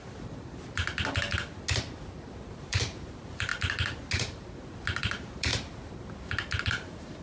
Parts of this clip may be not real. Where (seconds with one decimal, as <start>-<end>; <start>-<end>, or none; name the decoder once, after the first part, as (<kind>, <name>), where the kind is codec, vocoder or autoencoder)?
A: 0.0-0.8 (vocoder, BigVGAN v2); 2.4-3.5; 5.0-5.5; 6.6-7.2